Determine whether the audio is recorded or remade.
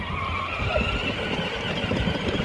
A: recorded